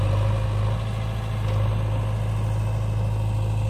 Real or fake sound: real